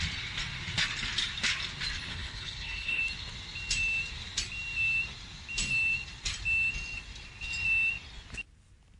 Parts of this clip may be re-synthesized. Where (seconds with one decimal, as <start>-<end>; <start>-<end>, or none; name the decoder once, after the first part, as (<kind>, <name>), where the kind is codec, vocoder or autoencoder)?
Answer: 2.1-3.0 (codec, HILCodec)